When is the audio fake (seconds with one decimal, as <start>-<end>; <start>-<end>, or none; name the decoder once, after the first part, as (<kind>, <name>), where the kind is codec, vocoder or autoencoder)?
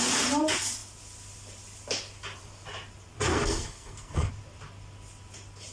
3.3-4.3 (codec, SNAC)